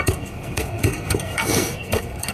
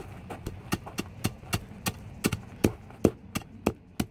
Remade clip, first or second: first